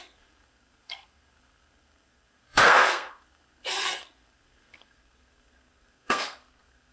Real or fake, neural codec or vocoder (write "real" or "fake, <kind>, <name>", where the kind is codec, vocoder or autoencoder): fake, codec, SNAC